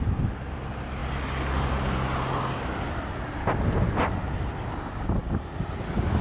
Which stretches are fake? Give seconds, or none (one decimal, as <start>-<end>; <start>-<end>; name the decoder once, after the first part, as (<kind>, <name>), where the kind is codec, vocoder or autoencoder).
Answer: none

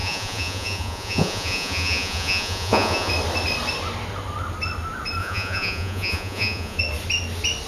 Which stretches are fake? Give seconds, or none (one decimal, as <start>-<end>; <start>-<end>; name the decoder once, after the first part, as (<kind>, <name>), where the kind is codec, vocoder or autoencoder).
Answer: 0.0-3.1 (vocoder, Vocos); 5.2-6.8

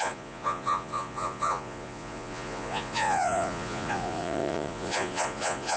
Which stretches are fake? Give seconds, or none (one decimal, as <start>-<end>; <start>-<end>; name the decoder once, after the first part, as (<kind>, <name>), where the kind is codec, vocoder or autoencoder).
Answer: 0.0-5.8 (vocoder, Vocos)

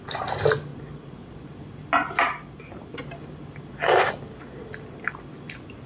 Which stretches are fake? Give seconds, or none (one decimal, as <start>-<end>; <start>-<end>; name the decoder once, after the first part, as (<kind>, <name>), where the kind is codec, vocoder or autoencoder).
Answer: none

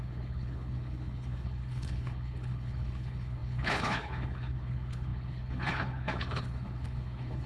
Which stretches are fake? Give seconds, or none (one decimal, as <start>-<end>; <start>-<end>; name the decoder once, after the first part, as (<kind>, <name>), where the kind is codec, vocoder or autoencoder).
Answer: 0.0-7.5 (codec, HILCodec)